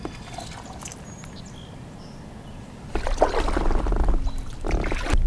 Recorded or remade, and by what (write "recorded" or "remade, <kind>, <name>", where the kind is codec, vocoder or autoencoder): recorded